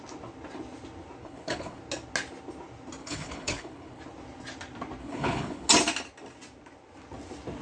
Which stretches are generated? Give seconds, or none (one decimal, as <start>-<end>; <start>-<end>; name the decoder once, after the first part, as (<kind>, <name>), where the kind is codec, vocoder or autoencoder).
1.2-1.8 (codec, HILCodec); 3.0-4.0; 5.0-5.7